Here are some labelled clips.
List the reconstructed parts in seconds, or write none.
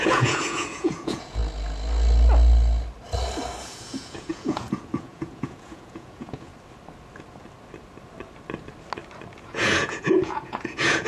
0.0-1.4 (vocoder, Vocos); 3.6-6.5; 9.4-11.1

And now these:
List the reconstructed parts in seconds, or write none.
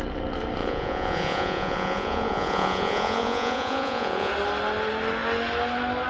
0.6-4.3 (vocoder, Vocos)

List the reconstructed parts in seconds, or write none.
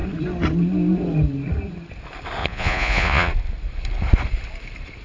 2.4-3.3 (vocoder, Vocos)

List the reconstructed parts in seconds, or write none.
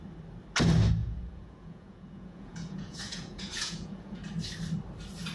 1.0-4.2 (vocoder, Vocos)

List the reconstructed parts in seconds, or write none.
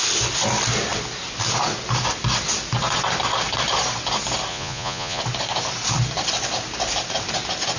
4.5-5.2 (vocoder, Vocos)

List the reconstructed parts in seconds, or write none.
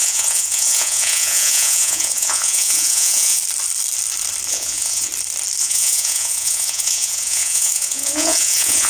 0.0-3.4 (vocoder, Vocos); 4.5-5.1; 5.6-8.9